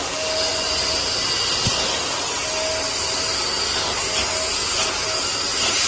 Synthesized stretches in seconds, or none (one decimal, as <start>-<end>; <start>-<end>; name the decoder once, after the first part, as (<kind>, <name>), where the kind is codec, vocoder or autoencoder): 0.5-1.1 (vocoder, Vocos)